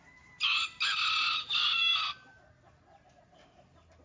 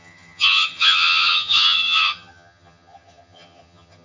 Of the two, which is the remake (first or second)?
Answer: second